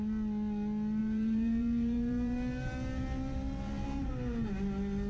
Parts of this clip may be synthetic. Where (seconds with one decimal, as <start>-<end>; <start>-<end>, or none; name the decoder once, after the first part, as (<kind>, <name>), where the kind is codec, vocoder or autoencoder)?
1.0-4.1 (vocoder, BigVGAN v2)